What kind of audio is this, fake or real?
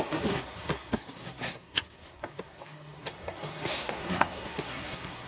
fake